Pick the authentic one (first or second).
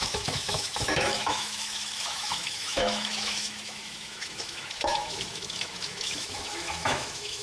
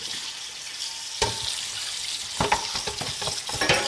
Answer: second